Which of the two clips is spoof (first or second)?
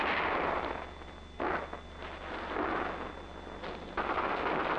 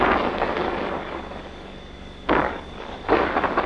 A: second